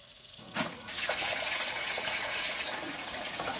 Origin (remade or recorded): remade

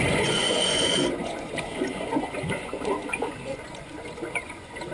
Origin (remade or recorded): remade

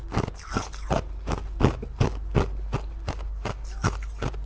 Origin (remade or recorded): recorded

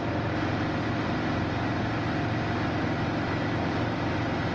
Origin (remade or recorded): recorded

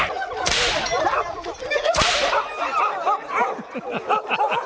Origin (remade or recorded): recorded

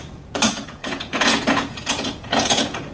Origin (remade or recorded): remade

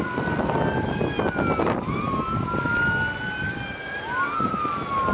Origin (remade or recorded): recorded